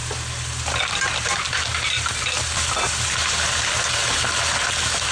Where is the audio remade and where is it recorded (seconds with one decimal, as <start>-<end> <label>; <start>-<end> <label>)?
0.0-5.1 recorded